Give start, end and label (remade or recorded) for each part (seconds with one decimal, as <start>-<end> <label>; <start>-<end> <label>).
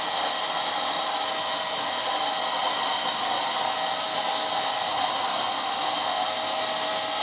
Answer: 0.0-7.2 recorded